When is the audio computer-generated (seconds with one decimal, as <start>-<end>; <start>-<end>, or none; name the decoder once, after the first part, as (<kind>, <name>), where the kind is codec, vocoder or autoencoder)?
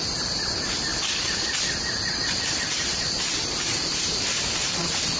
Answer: 0.0-0.9 (vocoder, BigVGAN v2); 2.1-5.2